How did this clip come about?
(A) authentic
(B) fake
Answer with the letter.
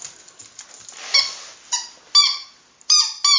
A